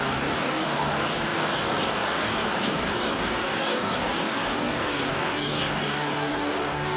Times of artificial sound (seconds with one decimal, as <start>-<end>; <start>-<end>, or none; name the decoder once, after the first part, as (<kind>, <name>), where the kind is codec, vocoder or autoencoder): 0.0-7.0 (codec, DAC)

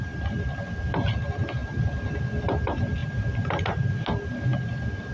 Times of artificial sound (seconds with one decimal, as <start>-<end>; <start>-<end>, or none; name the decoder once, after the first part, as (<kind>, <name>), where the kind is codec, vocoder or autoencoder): none

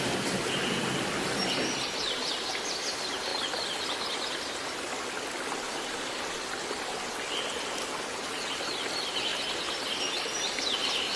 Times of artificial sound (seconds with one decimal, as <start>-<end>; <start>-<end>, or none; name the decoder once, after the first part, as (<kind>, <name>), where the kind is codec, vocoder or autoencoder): none

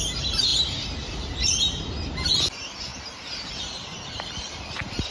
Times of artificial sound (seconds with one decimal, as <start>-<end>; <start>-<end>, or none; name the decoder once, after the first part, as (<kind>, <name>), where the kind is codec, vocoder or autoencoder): none

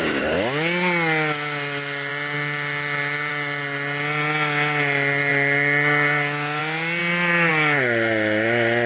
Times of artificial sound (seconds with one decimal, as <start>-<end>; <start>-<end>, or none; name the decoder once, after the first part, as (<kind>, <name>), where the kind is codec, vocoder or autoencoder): none

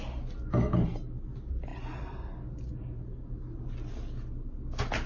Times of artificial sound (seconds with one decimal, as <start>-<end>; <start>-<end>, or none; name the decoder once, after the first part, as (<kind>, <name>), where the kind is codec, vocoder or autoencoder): none

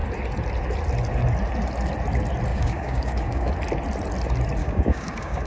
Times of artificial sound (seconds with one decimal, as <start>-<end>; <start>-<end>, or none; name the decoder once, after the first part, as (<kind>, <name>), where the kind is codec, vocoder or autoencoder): 2.5-3.5 (codec, DAC); 4.6-5.5

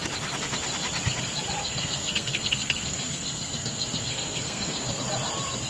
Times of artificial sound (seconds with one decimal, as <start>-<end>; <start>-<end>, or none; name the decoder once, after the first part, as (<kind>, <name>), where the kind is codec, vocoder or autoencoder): 1.6-5.0 (codec, SNAC)